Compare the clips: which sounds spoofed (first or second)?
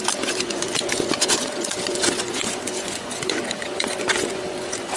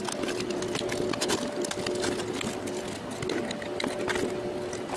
first